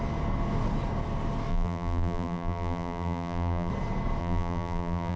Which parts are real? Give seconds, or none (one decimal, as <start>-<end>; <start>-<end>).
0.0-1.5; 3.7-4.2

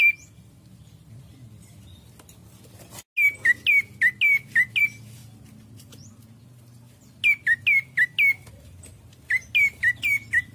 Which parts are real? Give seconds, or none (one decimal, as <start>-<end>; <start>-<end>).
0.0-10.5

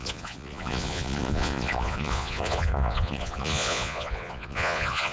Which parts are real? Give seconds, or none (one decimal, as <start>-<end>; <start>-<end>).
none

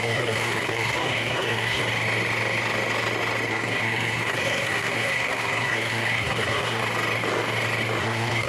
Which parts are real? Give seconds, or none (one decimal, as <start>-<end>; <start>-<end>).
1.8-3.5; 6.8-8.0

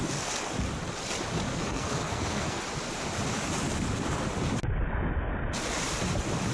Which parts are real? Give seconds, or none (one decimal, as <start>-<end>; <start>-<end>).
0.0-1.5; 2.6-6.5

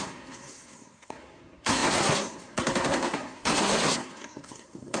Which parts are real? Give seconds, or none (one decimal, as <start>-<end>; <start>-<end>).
none

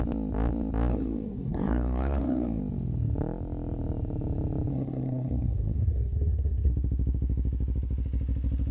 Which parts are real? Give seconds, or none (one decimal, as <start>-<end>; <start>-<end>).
0.0-0.9; 2.6-4.7; 6.7-8.7